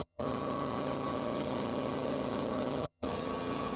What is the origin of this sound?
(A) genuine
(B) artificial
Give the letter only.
B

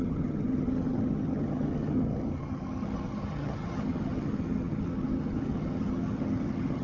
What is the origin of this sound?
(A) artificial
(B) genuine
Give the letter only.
A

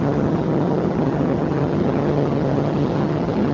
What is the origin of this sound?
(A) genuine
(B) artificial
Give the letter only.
B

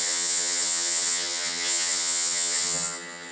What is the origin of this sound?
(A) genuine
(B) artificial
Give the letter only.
B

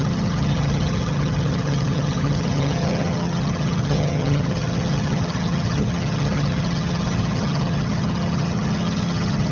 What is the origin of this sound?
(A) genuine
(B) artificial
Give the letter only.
B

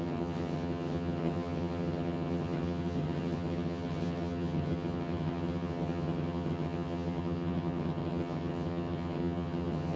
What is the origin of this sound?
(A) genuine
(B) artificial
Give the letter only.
B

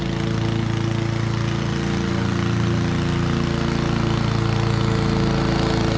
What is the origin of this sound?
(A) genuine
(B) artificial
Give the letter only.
A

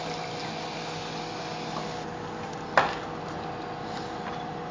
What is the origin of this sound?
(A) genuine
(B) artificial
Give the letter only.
A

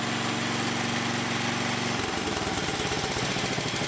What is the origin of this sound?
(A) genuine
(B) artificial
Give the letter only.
A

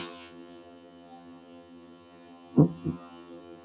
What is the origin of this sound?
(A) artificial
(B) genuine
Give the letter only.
A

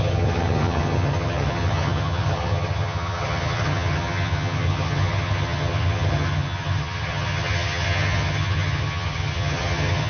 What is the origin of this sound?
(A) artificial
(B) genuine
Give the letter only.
A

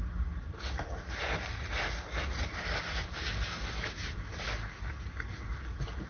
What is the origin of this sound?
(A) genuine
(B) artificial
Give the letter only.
A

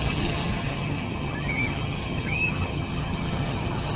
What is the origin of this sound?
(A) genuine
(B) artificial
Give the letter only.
B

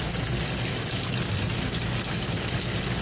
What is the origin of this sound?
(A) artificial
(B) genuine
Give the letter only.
B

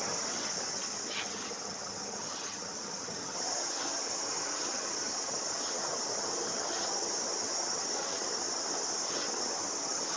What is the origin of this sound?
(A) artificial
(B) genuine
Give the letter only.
A